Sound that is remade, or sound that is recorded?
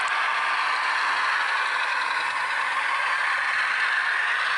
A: recorded